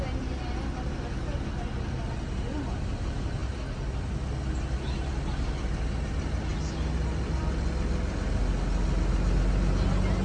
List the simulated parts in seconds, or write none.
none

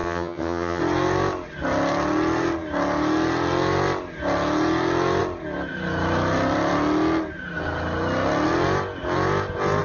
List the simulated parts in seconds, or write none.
0.0-0.8 (vocoder, HiFi-GAN)

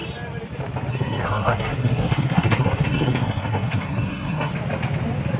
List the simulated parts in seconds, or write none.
0.9-4.5 (codec, SNAC)